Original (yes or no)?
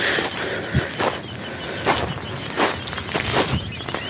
yes